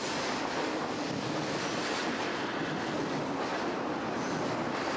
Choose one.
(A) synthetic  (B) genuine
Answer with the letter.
B